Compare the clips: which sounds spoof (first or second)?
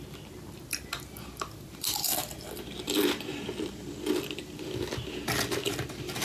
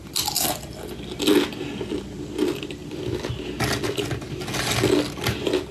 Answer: first